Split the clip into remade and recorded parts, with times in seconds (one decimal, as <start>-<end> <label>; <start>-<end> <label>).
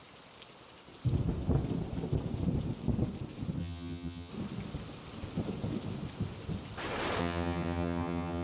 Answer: 0.0-3.6 recorded; 3.6-4.3 remade; 4.3-7.2 recorded; 7.2-8.4 remade